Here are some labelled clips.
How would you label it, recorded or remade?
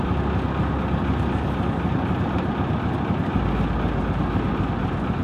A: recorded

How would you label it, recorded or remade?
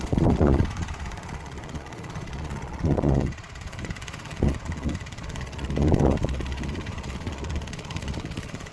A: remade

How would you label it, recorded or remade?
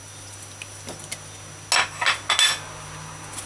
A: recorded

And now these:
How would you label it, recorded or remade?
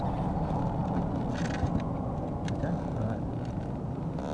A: recorded